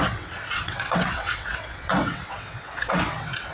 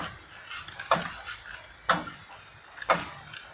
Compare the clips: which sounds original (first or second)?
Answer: second